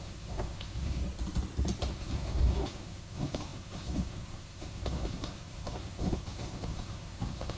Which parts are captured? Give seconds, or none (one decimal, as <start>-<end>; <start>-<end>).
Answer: 1.0-1.9